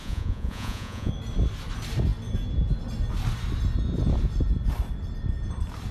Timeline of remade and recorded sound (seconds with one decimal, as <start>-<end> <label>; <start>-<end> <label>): 0.0-1.1 remade; 1.1-5.9 recorded